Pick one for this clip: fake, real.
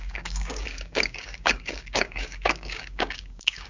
fake